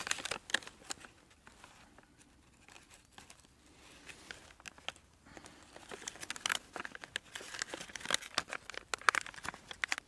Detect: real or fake real